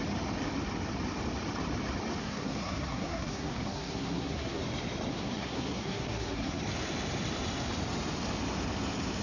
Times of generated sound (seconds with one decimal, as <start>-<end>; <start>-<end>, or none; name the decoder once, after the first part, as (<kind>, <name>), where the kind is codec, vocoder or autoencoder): 2.2-4.6 (codec, SNAC); 5.1-6.6